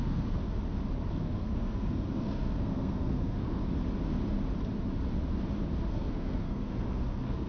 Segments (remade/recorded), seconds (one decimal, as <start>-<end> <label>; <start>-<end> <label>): 0.0-0.4 remade; 0.4-1.1 recorded; 1.1-3.6 remade; 3.6-5.9 recorded; 5.9-7.5 remade